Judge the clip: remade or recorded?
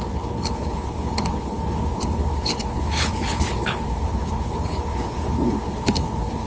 remade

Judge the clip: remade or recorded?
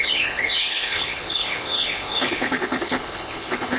remade